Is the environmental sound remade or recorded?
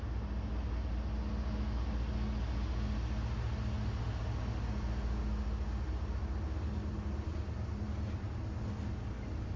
recorded